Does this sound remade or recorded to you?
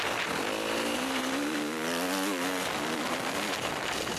recorded